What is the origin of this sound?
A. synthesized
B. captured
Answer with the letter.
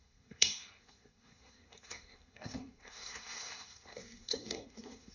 A